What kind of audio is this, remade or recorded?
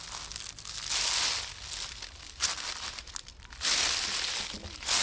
recorded